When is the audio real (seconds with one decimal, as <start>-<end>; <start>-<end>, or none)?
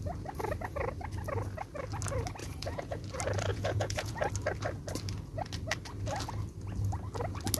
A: 0.0-2.4; 3.0-3.5; 4.3-7.6